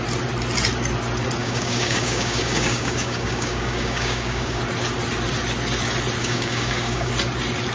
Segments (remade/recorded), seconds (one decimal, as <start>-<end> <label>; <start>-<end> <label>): 0.0-1.4 recorded; 1.4-4.6 remade; 4.6-6.2 recorded; 6.2-7.1 remade; 7.1-7.7 recorded